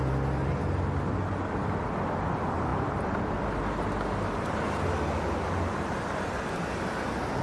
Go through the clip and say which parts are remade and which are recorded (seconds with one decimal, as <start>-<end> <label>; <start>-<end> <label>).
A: 0.0-7.4 recorded